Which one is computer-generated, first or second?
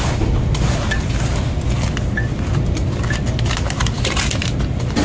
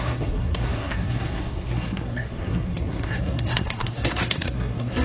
second